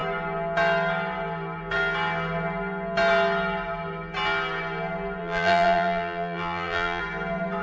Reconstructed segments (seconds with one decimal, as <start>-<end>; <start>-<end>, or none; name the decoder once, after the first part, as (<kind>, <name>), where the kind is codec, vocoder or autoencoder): 5.2-7.0 (vocoder, BigVGAN v2)